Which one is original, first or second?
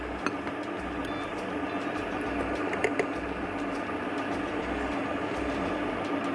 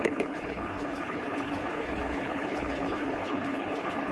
first